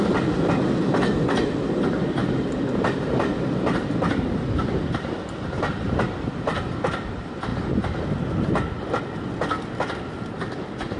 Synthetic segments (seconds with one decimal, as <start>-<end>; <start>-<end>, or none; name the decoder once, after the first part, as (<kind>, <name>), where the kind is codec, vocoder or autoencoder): 2.2-6.0 (vocoder, BigVGAN v2)